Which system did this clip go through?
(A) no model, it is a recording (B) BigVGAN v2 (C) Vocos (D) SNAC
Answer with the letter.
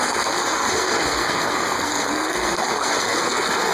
D